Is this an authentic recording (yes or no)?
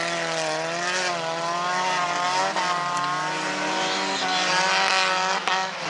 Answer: yes